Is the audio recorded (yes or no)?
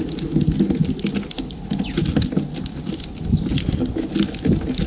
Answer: yes